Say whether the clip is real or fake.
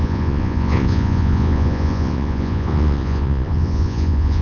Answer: fake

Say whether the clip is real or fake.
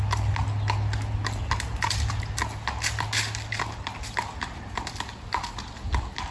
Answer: real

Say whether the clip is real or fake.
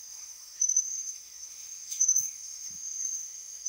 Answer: fake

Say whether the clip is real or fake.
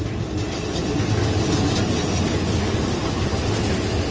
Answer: real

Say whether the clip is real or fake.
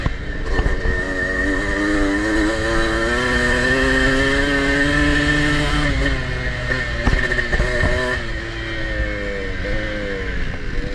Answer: real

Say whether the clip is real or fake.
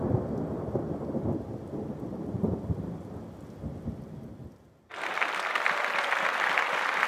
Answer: real